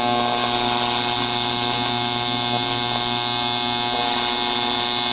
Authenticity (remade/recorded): recorded